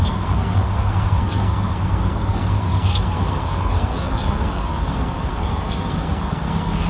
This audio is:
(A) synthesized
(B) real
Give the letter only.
A